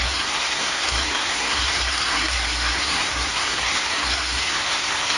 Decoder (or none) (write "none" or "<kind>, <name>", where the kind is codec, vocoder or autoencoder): codec, SNAC